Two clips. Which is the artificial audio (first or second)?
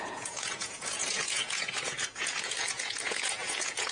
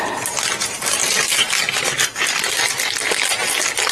first